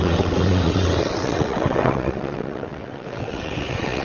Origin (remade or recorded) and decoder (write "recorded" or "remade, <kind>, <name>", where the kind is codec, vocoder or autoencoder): remade, vocoder, WaveNeXt